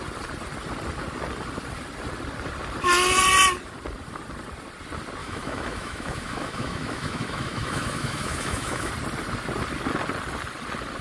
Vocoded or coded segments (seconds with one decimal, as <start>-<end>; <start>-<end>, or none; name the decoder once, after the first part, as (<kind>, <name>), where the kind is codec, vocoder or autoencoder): 5.2-8.9 (autoencoder, DAC-VAE)